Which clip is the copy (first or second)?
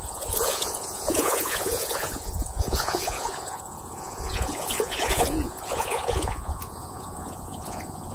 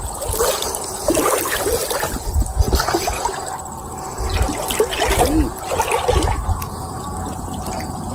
first